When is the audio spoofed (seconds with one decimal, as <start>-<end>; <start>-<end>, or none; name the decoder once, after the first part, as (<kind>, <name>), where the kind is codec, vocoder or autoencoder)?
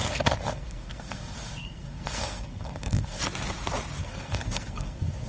0.0-3.2 (codec, SNAC); 4.0-5.3